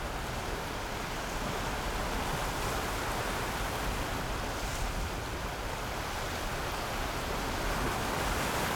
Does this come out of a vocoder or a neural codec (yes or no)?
no